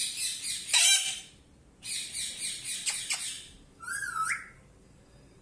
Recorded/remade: remade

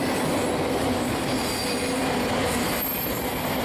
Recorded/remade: recorded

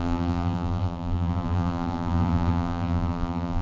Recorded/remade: remade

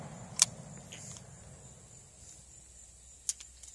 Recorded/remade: recorded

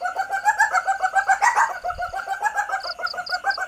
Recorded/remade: remade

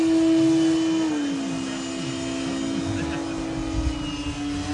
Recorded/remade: recorded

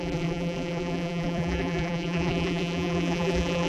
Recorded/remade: remade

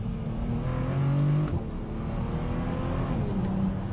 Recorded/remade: recorded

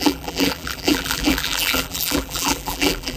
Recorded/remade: remade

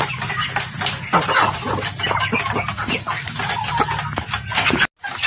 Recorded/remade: recorded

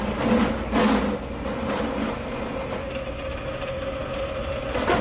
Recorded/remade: recorded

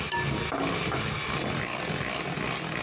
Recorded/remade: recorded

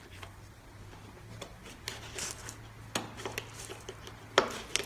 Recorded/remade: recorded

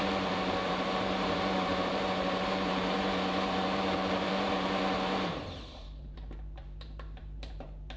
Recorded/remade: remade